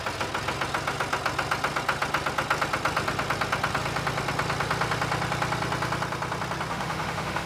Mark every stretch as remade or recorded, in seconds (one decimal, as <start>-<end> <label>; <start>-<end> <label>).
0.0-6.7 recorded; 6.7-7.5 remade

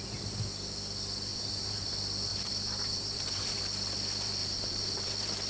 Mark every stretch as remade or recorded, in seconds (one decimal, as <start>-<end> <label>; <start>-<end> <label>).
0.0-1.3 recorded; 1.3-1.9 remade; 1.9-2.3 recorded; 2.3-3.6 remade; 3.6-4.4 recorded; 4.4-5.1 remade; 5.1-5.5 recorded